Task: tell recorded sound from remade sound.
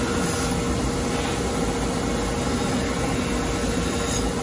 recorded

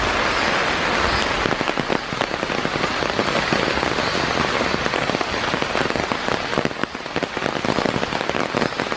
recorded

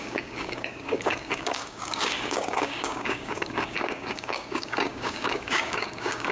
remade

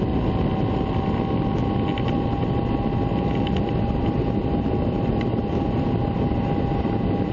recorded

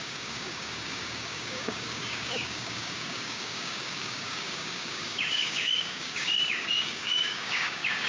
remade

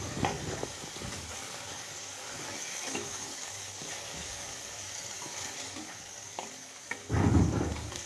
remade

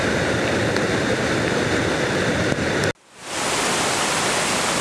recorded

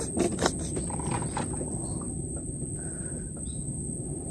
recorded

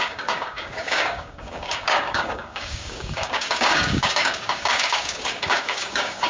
remade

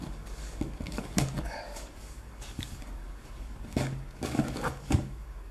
remade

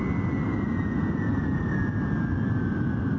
recorded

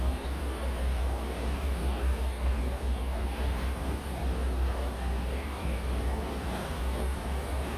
remade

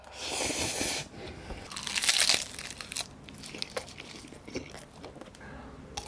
recorded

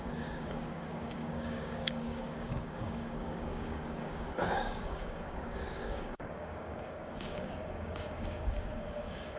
remade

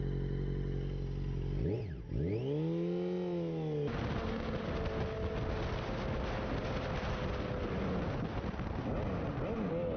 recorded